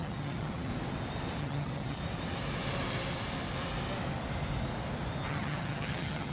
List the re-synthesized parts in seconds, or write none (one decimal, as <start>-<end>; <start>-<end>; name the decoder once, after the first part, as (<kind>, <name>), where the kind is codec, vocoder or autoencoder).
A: 0.0-0.7 (vocoder, HiFi-GAN); 1.4-2.0; 5.3-6.3